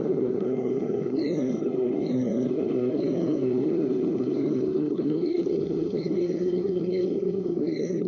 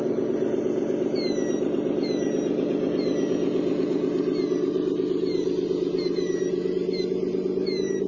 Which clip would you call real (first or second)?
second